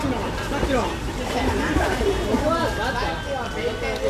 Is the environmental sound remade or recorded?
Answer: recorded